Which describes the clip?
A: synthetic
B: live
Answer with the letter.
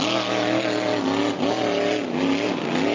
B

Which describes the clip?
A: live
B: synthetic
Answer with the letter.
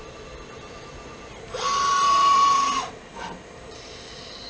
B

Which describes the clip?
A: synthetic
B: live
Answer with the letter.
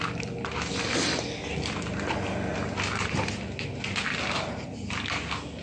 B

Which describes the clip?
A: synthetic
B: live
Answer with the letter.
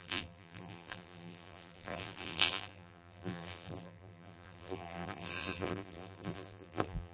A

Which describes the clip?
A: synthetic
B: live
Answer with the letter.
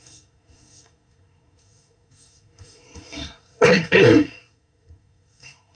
A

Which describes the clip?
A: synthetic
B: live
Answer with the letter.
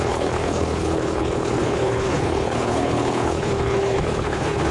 A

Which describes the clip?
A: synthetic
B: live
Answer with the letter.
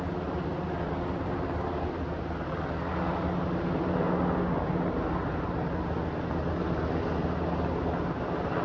B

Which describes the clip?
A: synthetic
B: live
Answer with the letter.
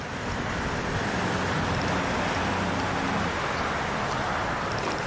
B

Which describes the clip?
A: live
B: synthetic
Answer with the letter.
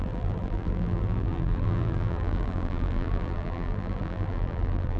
B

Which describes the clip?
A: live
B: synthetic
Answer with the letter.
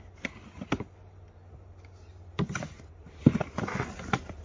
A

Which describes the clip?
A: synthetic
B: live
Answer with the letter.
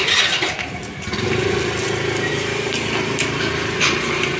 A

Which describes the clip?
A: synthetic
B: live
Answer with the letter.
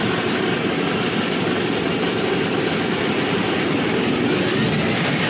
B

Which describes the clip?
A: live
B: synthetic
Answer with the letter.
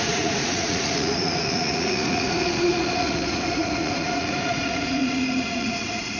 B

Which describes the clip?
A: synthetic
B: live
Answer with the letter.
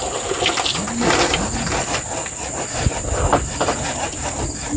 B